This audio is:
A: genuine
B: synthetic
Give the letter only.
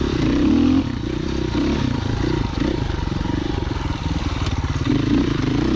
B